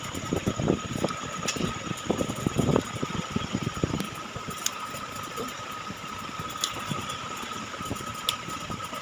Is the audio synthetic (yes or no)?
no